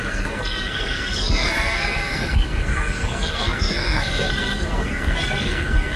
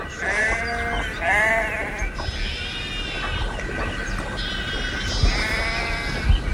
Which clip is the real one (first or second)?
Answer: second